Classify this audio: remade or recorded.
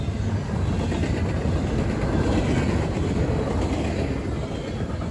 recorded